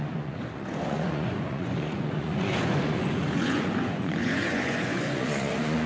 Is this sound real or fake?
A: fake